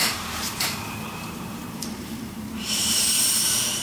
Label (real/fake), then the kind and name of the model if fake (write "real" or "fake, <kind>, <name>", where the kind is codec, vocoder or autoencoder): fake, vocoder, BigVGAN v2